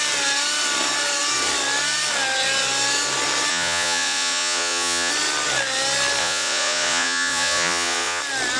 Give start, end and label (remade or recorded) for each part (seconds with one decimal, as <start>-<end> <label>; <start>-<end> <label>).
0.0-3.5 recorded; 3.5-5.1 remade; 5.1-6.2 recorded; 6.2-8.2 remade; 8.2-8.6 recorded